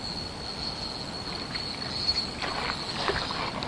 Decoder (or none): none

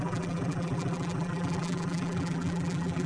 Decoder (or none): vocoder, BigVGAN v2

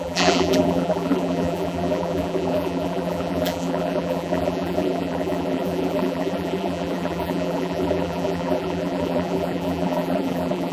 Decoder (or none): vocoder, BigVGAN v2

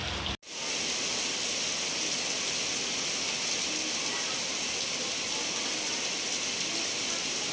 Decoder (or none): none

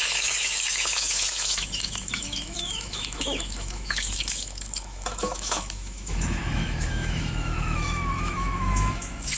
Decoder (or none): autoencoder, DAC-VAE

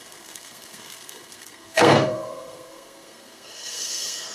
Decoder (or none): codec, SNAC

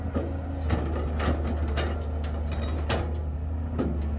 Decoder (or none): none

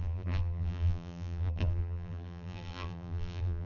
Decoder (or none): vocoder, BigVGAN v2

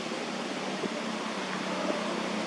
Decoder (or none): none